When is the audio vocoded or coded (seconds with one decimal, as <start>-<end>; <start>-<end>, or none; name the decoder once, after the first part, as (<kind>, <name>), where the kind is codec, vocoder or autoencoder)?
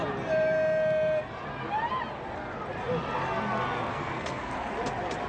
3.9-4.7 (codec, SNAC)